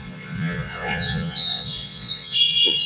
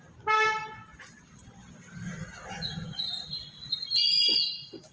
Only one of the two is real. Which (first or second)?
second